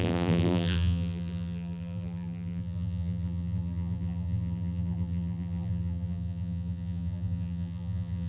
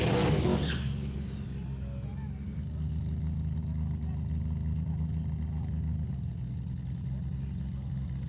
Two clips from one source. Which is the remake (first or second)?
first